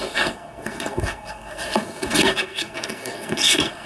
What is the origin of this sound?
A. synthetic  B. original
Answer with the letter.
A